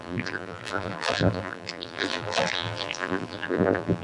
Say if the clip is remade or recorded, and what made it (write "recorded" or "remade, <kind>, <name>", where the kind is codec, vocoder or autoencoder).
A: remade, vocoder, BigVGAN v2